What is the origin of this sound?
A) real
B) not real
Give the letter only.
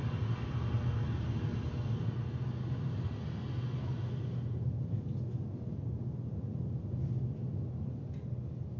A